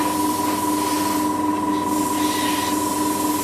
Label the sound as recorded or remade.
recorded